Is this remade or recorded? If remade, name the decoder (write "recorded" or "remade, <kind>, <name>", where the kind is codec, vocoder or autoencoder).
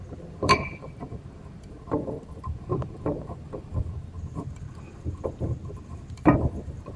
remade, vocoder, BigVGAN v2